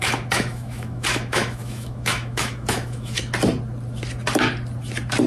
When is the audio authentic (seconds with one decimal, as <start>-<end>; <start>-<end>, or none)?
3.2-5.3